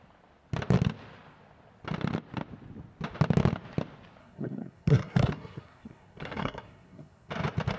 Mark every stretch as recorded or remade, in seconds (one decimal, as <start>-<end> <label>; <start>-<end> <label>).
0.0-4.2 recorded; 4.2-7.3 remade; 7.3-7.8 recorded